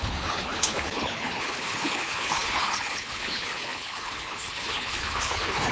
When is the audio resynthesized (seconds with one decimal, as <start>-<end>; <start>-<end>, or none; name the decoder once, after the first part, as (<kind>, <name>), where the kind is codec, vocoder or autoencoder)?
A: 0.0-5.7 (codec, HILCodec)